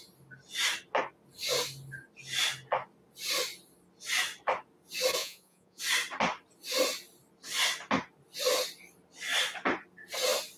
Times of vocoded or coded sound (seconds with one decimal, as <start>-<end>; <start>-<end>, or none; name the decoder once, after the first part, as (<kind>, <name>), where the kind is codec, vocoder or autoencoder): 5.2-5.8 (vocoder, Vocos)